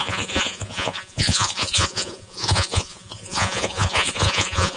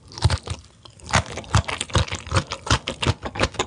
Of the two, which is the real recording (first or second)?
second